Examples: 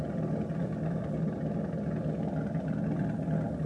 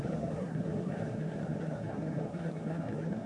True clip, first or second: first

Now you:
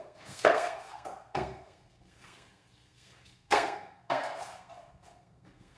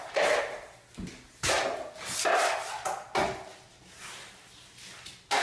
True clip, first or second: second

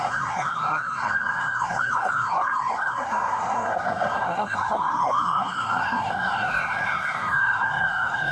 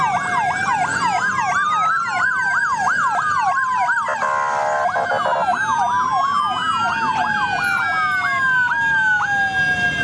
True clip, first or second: second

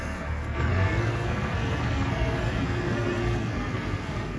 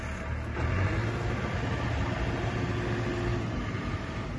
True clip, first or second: second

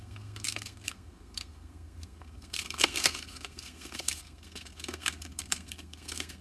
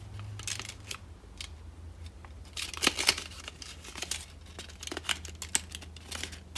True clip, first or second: second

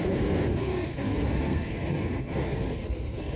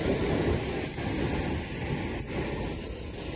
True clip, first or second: second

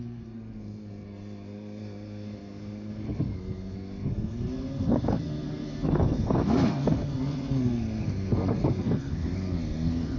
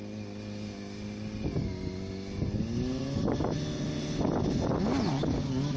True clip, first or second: second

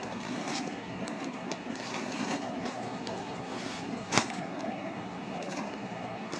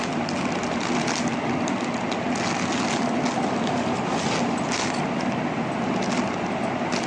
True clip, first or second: second